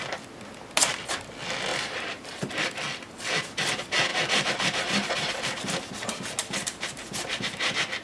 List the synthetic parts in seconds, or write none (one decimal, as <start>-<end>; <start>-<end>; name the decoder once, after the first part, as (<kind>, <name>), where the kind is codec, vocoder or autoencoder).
1.7-2.5 (vocoder, BigVGAN v2); 4.1-5.6; 6.4-7.0